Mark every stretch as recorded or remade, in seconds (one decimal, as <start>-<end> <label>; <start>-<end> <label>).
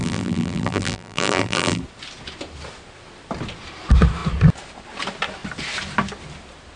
0.0-1.8 remade; 1.8-6.8 recorded